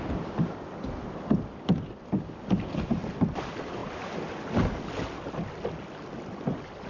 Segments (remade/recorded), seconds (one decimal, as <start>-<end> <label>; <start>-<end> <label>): 0.0-6.9 recorded